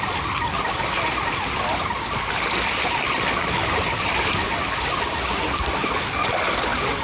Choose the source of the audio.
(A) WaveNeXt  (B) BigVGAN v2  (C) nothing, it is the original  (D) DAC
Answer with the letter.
C